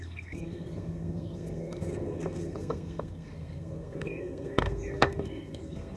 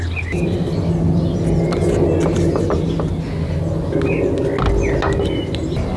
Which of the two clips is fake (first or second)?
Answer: first